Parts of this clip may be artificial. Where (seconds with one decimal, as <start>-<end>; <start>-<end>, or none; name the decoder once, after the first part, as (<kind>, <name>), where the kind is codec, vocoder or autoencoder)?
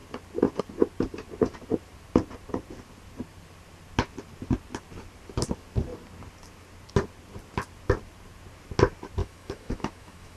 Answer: 9.2-10.4 (autoencoder, DAC-VAE)